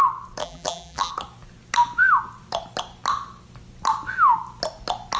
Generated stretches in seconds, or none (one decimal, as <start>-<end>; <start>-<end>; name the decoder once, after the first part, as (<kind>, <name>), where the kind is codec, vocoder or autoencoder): 0.4-1.1 (vocoder, BigVGAN v2)